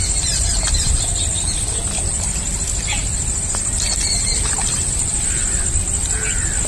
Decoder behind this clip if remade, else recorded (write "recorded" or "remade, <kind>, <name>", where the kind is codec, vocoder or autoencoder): recorded